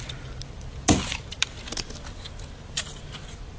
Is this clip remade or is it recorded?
recorded